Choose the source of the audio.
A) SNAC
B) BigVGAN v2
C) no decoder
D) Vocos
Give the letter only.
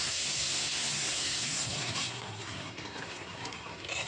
A